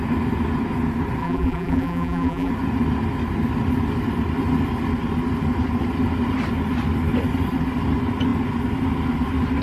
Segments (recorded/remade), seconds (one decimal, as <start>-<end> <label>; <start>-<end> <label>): 0.0-1.2 recorded; 1.2-2.5 remade; 2.5-9.6 recorded